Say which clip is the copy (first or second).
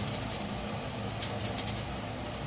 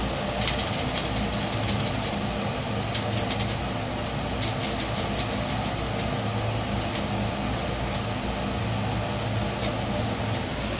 first